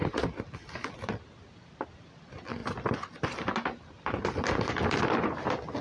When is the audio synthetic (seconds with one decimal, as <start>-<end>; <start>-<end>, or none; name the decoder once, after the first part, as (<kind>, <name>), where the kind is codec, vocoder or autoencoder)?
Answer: none